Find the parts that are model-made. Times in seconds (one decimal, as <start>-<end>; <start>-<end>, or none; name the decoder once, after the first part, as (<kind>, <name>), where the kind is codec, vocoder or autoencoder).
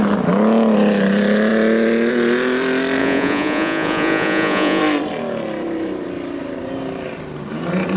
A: 3.0-4.8 (vocoder, Vocos)